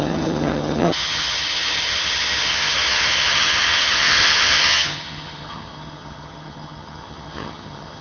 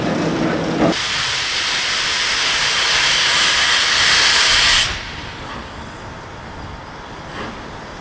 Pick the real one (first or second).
second